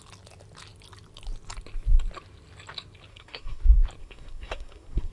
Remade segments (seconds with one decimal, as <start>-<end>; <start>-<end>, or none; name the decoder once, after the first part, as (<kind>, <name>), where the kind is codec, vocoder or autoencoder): 3.1-3.6 (codec, SNAC); 4.0-5.1